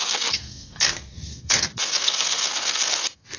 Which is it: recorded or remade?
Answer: remade